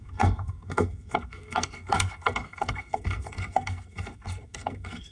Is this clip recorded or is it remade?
remade